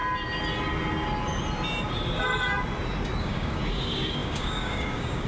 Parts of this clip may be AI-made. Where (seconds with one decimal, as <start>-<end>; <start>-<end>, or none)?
3.2-5.3